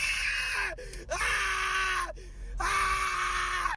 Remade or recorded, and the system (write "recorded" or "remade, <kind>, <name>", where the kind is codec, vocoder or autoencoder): recorded